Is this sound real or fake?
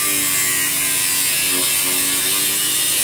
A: real